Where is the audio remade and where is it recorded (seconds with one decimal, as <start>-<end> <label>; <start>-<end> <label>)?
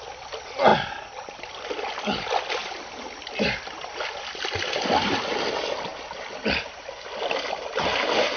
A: 0.0-8.4 recorded